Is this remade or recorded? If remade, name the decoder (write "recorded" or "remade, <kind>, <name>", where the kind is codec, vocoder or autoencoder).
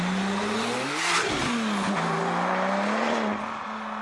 recorded